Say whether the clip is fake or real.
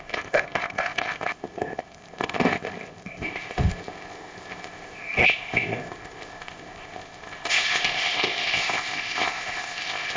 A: fake